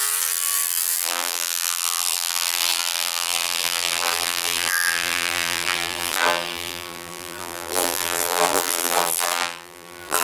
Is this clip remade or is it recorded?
remade